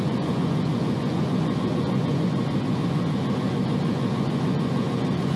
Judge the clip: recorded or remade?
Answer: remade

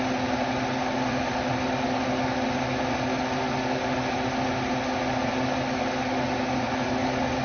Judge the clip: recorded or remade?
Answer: recorded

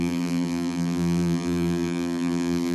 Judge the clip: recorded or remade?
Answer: remade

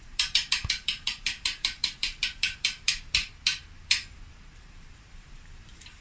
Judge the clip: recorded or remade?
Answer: remade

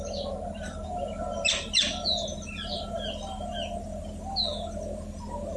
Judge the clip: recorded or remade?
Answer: recorded